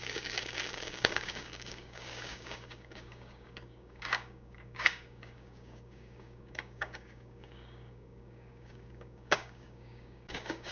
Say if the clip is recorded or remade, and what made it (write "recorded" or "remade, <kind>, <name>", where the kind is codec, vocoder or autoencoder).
remade, codec, DAC